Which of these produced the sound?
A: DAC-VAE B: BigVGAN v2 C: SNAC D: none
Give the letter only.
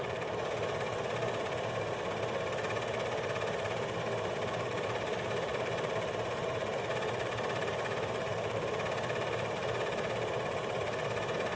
D